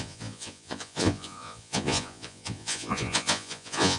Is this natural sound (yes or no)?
no